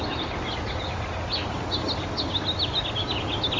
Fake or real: real